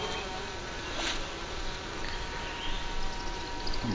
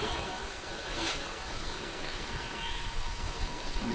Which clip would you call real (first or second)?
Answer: first